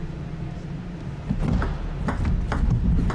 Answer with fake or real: real